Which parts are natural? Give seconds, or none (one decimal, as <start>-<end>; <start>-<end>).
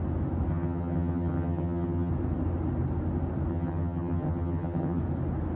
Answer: 0.0-0.5; 2.1-3.5; 5.0-5.6